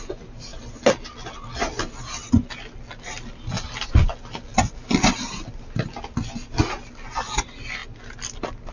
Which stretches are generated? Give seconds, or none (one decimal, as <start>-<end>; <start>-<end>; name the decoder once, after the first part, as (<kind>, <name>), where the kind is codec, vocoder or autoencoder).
none

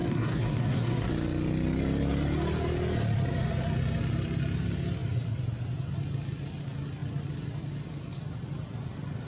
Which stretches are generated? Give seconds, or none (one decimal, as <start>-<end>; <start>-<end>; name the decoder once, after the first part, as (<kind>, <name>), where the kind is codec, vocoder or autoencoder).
0.0-1.1 (codec, SNAC)

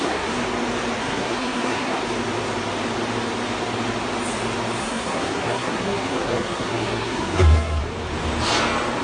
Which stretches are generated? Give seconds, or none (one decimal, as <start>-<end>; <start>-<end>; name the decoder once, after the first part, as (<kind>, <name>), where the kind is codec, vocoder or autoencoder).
0.0-0.4 (codec, SNAC); 1.0-2.0; 4.8-7.8

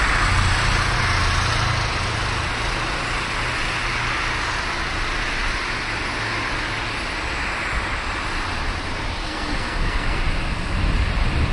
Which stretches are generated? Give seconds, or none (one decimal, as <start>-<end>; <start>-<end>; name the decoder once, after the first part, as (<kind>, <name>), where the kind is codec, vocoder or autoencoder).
9.2-10.2 (codec, SNAC)